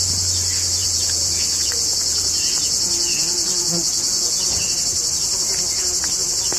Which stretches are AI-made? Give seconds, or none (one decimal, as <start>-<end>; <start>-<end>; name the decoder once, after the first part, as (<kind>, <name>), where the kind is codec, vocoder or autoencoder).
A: 0.8-4.6 (vocoder, Vocos)